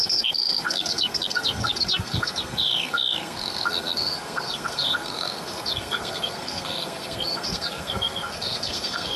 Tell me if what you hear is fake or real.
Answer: fake